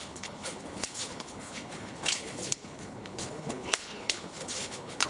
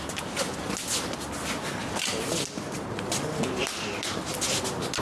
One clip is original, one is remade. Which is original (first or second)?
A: second